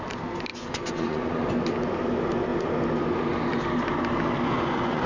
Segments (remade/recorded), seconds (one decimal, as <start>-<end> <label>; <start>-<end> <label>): 0.0-0.5 recorded; 0.5-1.5 remade; 1.5-4.5 recorded; 4.5-5.1 remade